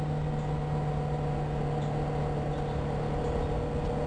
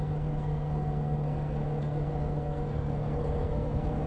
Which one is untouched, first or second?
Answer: first